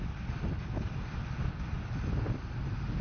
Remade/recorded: recorded